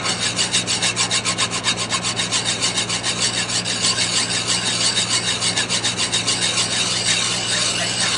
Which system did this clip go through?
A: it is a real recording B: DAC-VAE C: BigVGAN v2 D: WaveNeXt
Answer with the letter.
A